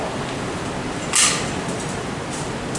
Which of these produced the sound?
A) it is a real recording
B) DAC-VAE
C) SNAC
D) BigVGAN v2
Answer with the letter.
A